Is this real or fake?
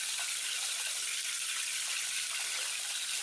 real